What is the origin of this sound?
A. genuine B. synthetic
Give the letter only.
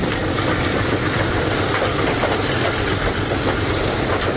A